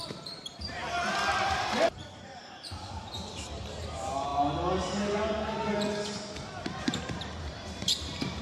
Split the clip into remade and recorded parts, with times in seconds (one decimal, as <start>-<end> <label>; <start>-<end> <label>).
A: 0.0-0.8 remade; 0.8-1.4 recorded; 1.4-4.3 remade; 4.3-6.8 recorded; 6.8-8.4 remade

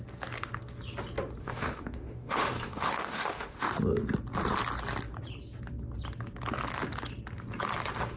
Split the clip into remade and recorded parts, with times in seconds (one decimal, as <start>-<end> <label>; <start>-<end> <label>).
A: 0.0-1.4 recorded; 1.4-3.7 remade; 3.7-8.2 recorded

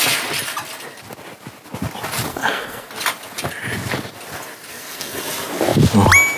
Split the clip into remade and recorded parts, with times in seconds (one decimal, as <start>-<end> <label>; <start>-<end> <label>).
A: 0.0-2.3 recorded; 2.3-2.9 remade; 2.9-4.7 recorded; 4.7-5.2 remade; 5.2-6.4 recorded

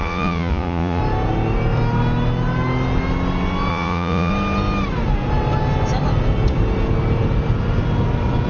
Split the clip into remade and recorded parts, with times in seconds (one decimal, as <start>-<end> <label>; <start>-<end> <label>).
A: 0.0-1.0 remade; 1.0-3.7 recorded; 3.7-4.3 remade; 4.3-8.5 recorded

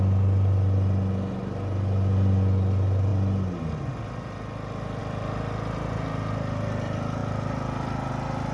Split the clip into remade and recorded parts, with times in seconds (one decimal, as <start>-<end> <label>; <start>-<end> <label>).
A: 0.0-8.5 recorded

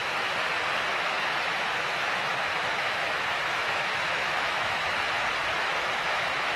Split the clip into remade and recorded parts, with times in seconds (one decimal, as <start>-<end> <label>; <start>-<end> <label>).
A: 0.0-0.9 recorded; 0.9-4.9 remade; 4.9-5.6 recorded; 5.6-6.6 remade